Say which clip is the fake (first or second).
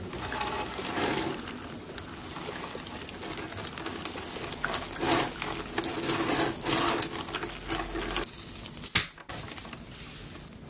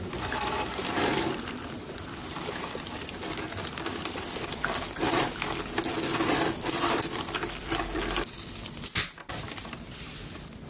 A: second